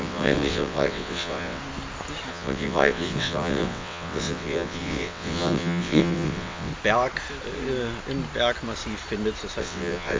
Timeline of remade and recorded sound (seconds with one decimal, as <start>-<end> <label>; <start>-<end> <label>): 0.0-1.6 remade; 1.6-2.3 recorded; 2.3-6.7 remade; 6.7-9.6 recorded; 9.6-10.2 remade